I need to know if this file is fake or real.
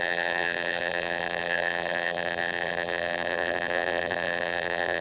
fake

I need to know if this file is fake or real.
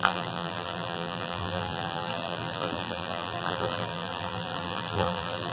fake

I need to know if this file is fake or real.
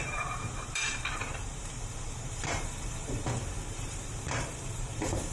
fake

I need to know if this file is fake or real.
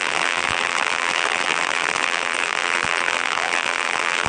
fake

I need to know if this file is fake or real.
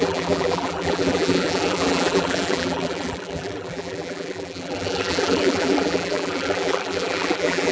fake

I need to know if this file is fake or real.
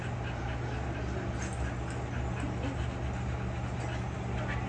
real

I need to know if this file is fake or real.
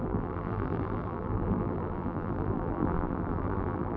fake